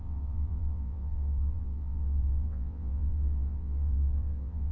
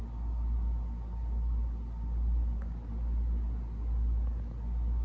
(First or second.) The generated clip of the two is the first